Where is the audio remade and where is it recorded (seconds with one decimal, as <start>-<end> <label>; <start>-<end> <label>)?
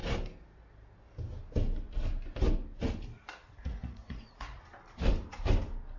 0.0-3.6 recorded; 3.6-4.6 remade; 4.6-6.0 recorded